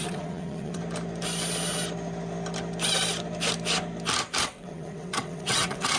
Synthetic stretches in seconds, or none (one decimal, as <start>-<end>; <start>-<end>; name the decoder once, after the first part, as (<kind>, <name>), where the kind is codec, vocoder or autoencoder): 0.0-0.8 (vocoder, WaveNeXt); 4.4-6.0